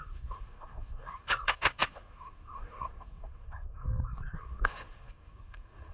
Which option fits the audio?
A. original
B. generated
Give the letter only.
B